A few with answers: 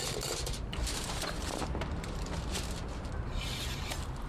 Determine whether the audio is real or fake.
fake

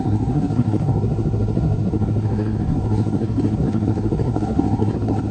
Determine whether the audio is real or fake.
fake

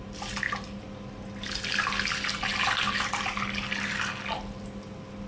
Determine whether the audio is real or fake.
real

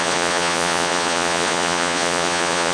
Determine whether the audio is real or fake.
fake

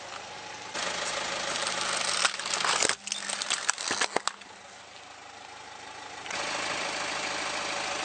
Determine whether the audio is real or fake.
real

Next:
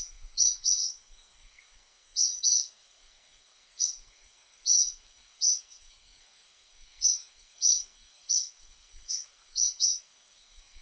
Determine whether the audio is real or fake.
fake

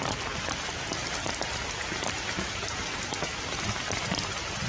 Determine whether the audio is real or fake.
real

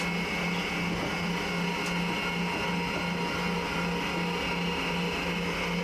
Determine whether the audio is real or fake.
real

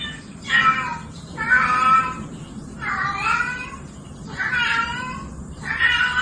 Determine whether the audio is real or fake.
real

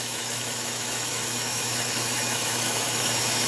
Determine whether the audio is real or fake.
fake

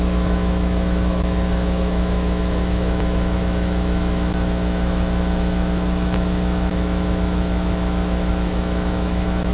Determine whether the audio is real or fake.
fake